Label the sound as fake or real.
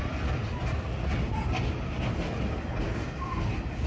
real